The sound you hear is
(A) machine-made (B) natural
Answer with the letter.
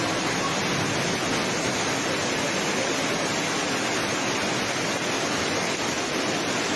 B